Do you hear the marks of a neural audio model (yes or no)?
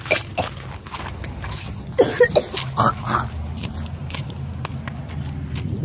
no